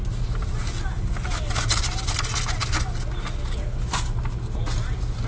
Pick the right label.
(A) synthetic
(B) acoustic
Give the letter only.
B